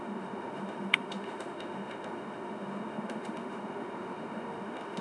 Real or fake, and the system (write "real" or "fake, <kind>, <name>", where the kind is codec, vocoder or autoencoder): fake, autoencoder, DAC-VAE